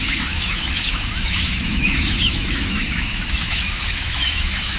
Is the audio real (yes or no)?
no